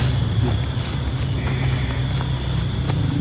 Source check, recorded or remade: recorded